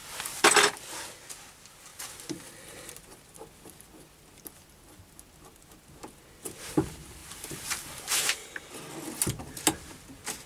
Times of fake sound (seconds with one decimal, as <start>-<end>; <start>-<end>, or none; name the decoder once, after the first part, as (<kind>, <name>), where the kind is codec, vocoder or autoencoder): 0.0-0.5 (vocoder, BigVGAN v2); 7.2-8.6

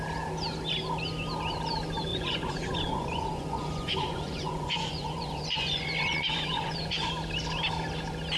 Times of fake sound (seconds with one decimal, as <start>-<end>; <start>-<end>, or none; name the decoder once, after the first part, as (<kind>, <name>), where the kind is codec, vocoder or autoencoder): 2.1-7.1 (vocoder, Vocos)

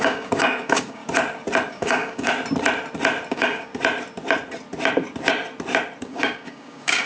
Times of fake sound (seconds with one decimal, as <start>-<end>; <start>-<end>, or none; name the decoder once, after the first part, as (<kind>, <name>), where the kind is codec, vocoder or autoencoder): 0.0-1.0 (codec, DAC); 1.7-2.3; 3.3-3.7; 6.0-7.1

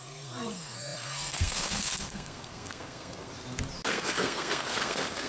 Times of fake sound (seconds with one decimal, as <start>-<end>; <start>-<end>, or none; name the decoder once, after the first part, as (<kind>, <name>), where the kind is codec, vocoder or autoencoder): 0.0-3.3 (codec, SNAC); 3.9-5.3